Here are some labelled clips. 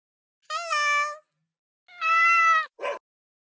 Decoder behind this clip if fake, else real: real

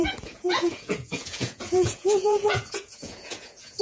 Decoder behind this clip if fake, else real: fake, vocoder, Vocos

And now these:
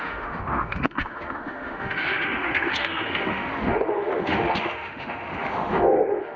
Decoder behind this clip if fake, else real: fake, autoencoder, DAC-VAE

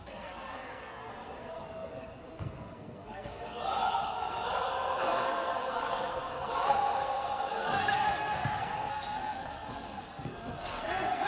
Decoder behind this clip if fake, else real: fake, codec, SNAC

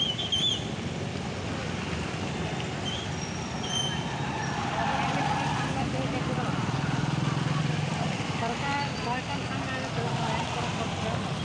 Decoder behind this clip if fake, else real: real